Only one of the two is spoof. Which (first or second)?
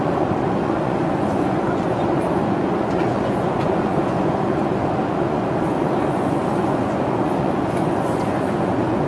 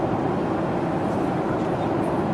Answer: first